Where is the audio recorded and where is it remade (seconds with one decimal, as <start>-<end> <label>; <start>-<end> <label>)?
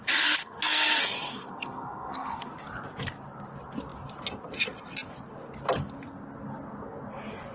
0.0-0.4 recorded; 0.4-2.5 remade; 2.5-7.5 recorded